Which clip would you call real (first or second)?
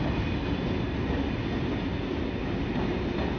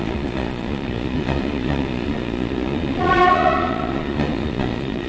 first